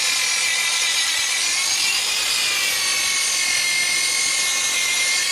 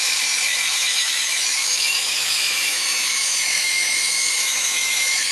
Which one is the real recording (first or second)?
first